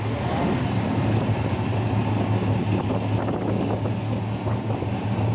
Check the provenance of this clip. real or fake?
real